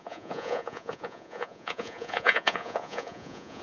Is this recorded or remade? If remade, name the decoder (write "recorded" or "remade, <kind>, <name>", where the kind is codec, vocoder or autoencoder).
remade, vocoder, Vocos